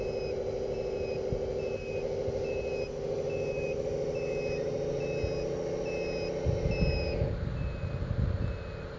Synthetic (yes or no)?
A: no